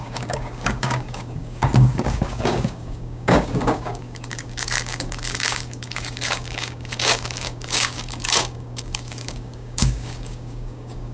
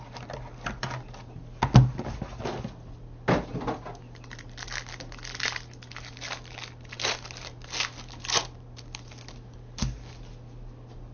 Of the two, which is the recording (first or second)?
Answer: second